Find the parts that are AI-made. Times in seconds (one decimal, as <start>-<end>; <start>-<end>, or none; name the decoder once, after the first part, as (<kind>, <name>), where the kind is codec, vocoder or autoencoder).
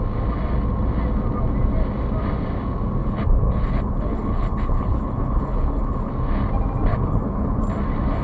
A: 3.0-6.1 (codec, HILCodec); 6.9-7.6